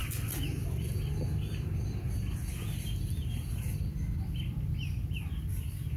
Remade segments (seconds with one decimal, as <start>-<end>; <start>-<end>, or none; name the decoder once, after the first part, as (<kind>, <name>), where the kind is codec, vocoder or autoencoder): none